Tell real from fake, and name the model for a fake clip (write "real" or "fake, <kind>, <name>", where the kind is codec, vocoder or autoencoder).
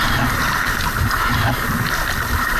real